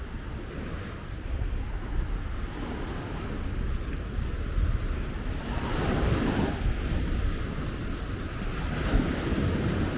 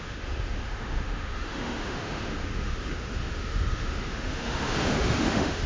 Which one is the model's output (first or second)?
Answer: second